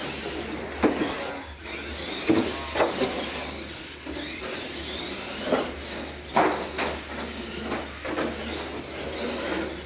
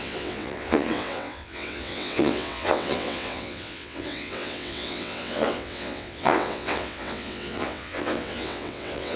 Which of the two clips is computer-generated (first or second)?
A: second